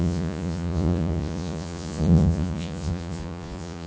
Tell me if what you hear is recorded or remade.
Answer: remade